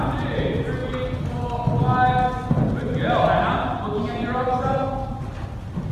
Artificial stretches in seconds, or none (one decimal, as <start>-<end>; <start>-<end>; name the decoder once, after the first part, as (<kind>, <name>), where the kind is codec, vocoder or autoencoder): none